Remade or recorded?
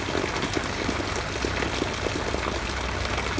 recorded